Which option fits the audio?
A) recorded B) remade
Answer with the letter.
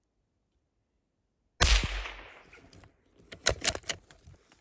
A